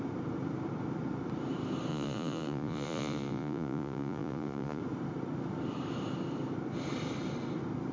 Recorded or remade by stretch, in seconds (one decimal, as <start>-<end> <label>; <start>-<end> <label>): 0.0-1.9 recorded; 1.9-4.8 remade; 4.8-7.9 recorded

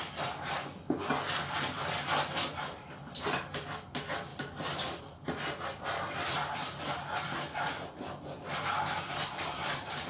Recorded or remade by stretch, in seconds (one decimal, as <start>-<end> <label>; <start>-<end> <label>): 0.0-10.1 recorded

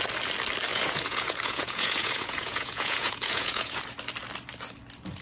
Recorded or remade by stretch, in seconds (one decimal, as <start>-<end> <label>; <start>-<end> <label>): 0.0-0.7 recorded; 0.7-3.8 remade; 3.8-5.2 recorded